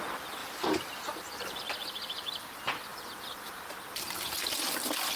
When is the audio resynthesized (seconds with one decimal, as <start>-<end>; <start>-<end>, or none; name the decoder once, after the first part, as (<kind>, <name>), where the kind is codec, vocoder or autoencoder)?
0.4-1.6 (vocoder, BigVGAN v2)

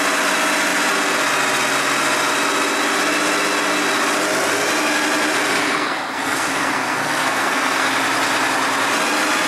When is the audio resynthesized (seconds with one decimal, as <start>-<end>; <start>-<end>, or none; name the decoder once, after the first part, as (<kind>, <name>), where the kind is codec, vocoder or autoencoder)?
5.6-7.9 (codec, SNAC)

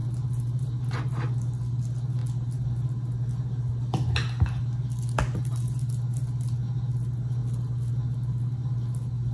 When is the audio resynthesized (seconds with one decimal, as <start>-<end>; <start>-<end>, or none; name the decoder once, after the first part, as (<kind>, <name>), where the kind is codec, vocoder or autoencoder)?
none

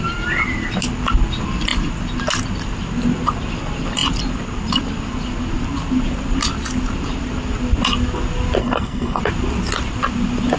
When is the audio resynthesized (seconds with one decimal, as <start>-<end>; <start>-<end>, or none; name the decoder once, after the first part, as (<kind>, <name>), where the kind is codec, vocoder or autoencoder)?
8.6-9.2 (codec, SNAC)

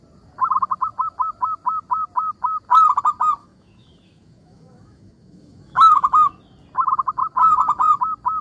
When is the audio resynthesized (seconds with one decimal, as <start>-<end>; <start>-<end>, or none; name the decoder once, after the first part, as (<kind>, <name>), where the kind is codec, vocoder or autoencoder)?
3.4-6.3 (autoencoder, DAC-VAE)